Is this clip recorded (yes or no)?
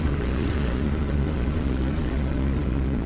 no